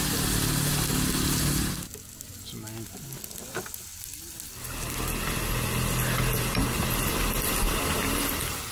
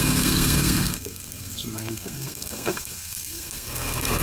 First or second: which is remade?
second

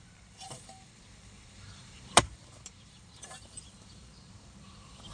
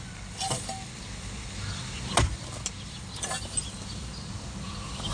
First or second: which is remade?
first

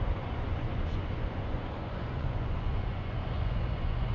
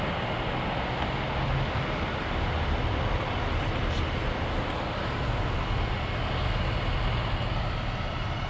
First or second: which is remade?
first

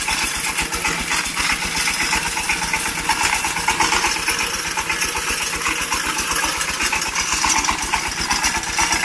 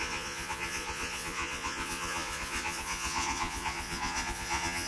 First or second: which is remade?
second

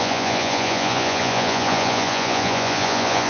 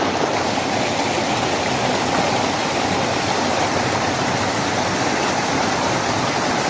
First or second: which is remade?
first